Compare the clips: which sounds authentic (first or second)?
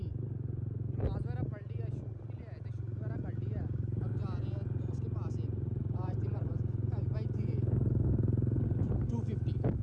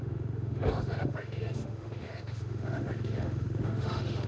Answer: first